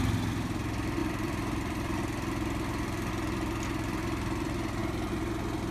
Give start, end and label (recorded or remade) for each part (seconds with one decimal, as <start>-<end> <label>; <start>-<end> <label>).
0.0-1.0 recorded; 1.0-3.1 remade; 3.1-5.7 recorded